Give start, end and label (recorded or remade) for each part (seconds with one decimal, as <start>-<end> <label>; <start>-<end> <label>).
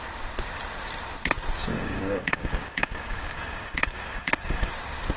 0.0-1.7 recorded; 1.7-4.7 remade; 4.7-5.2 recorded